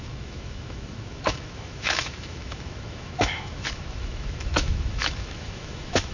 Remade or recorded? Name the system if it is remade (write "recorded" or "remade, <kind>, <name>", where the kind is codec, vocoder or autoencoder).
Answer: remade, autoencoder, DAC-VAE